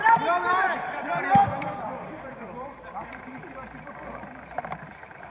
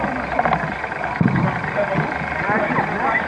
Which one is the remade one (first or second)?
first